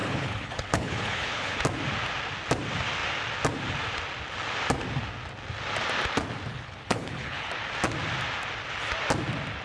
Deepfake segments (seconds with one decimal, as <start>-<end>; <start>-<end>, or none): 0.0-1.6; 6.5-7.5